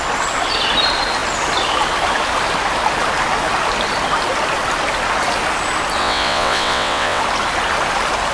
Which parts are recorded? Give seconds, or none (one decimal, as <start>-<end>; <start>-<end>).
0.0-6.0; 7.2-8.3